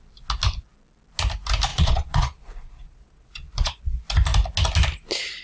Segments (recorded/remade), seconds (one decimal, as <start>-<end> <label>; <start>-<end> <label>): 0.0-1.7 recorded; 1.7-3.8 remade; 3.8-5.4 recorded